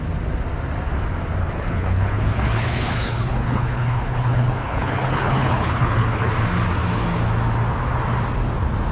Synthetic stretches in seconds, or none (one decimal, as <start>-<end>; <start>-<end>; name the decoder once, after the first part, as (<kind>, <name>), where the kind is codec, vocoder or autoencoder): 1.4-6.3 (codec, HILCodec)

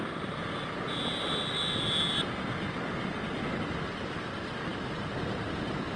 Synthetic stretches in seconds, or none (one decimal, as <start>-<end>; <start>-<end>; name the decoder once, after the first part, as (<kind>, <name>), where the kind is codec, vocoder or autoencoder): none

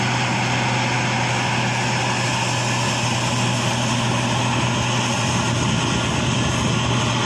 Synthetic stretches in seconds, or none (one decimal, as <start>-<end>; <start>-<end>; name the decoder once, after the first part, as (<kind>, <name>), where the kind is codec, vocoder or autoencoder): none

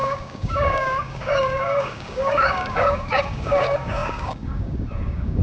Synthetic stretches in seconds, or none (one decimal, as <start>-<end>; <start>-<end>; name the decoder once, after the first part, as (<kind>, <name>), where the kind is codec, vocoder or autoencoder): 0.0-5.4 (codec, DAC)

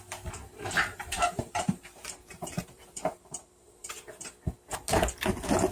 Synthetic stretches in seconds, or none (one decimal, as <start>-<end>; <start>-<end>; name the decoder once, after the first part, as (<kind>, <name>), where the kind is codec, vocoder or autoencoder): 0.9-4.2 (vocoder, BigVGAN v2)

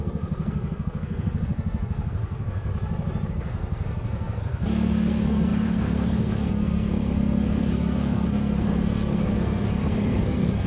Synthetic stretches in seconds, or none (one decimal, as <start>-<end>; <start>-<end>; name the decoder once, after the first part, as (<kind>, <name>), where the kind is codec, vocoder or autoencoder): 0.0-2.7 (codec, SNAC); 3.3-10.7